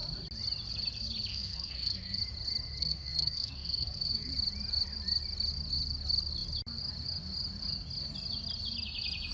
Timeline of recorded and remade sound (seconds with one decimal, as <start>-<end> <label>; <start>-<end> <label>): 0.0-1.3 recorded; 1.3-2.2 remade; 2.2-2.8 recorded; 2.8-4.3 remade; 4.3-9.3 recorded